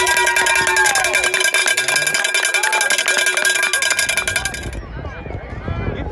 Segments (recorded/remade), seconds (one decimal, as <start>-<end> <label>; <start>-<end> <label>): 0.0-6.1 recorded